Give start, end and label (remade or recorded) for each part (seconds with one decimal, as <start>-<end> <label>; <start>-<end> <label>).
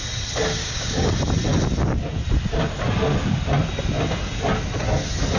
0.0-0.6 recorded; 0.6-1.1 remade; 1.1-5.4 recorded